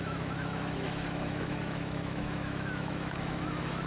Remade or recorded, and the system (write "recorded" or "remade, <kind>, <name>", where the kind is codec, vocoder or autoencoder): remade, autoencoder, DAC-VAE